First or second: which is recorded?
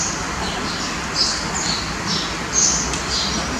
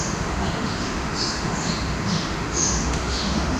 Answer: first